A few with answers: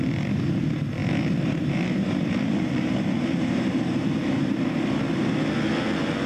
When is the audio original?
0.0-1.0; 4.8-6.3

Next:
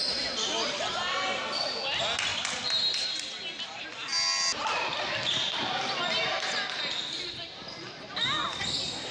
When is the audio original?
0.0-9.1

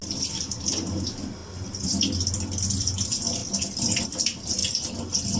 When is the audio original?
0.0-0.7; 1.4-2.7; 3.4-4.1; 4.6-5.4

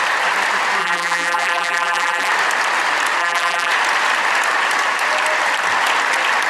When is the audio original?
0.0-0.8; 2.3-3.2; 3.7-6.5